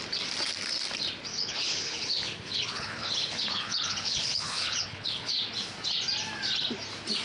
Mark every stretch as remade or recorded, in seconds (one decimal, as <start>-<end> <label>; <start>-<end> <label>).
0.0-1.3 recorded; 1.3-5.3 remade; 5.3-7.2 recorded